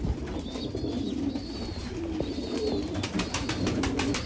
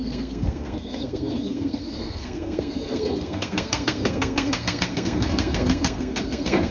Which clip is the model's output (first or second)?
second